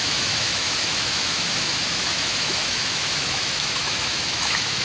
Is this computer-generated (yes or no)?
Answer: yes